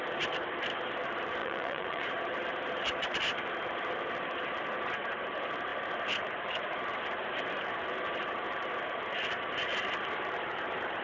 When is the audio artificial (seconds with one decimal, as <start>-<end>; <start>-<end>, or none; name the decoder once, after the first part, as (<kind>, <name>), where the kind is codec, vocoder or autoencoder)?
1.4-2.1 (vocoder, Vocos)